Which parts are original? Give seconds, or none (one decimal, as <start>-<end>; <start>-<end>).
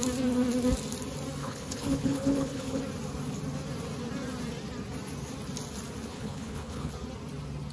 0.0-1.4; 2.8-6.1; 6.9-7.7